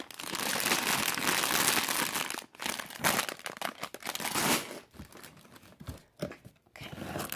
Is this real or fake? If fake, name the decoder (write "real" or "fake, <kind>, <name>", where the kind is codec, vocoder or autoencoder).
real